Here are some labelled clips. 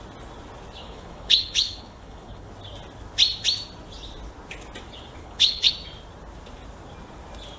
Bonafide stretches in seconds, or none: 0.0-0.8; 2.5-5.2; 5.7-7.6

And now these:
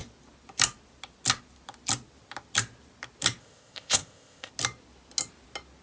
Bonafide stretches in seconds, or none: 0.0-3.4; 4.5-5.8